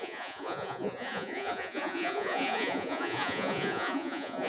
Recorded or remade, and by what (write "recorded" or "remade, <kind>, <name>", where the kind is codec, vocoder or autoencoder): remade, vocoder, Vocos